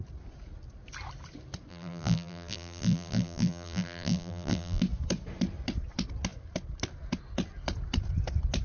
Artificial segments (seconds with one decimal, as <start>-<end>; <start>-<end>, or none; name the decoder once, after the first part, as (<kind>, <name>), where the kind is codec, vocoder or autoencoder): 1.7-4.8 (vocoder, BigVGAN v2)